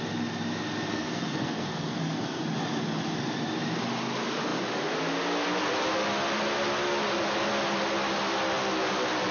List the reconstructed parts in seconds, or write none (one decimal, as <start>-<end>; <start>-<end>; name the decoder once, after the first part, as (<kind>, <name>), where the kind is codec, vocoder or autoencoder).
0.9-2.4 (codec, SNAC)